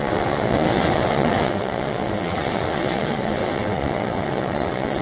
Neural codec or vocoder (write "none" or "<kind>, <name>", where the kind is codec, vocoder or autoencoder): vocoder, WaveNeXt